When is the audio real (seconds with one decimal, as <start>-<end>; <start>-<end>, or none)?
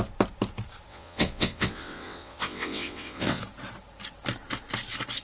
0.0-0.9; 3.4-5.2